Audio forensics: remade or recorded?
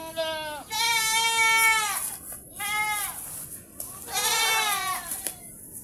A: recorded